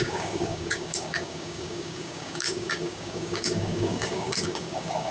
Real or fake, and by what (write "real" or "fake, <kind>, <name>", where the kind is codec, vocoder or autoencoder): fake, codec, DAC